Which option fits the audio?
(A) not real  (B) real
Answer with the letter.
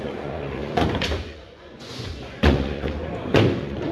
A